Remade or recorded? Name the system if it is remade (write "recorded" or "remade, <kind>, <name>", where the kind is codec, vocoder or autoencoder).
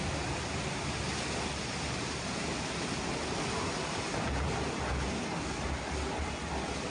recorded